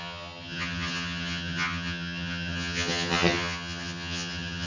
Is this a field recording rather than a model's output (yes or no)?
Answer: no